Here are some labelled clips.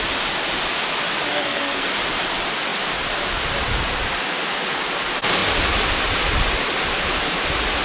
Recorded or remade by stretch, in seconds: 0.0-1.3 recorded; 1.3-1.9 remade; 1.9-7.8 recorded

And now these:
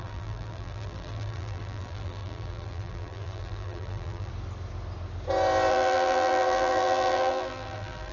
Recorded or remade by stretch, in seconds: 0.0-4.3 remade; 4.3-5.7 recorded; 5.7-8.1 remade

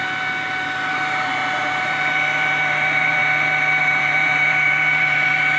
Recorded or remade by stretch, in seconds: 0.0-0.9 recorded; 0.9-3.2 remade; 3.2-3.8 recorded; 3.8-5.6 remade

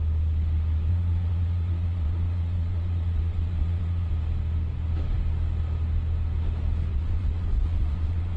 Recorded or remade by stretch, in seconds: 0.0-0.9 recorded; 0.9-4.1 remade; 4.1-6.9 recorded; 6.9-8.4 remade

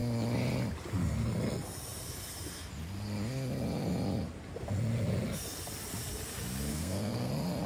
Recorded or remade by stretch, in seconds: 0.0-6.7 recorded; 6.7-7.3 remade; 7.3-7.7 recorded